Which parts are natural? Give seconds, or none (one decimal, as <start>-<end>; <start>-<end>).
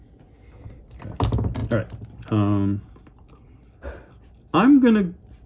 0.0-5.5